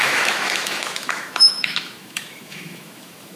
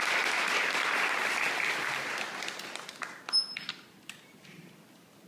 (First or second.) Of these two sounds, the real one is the second